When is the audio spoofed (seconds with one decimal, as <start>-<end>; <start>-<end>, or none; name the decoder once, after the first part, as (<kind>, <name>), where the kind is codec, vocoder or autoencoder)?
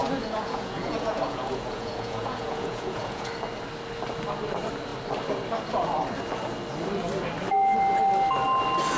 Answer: 0.0-3.3 (vocoder, Vocos)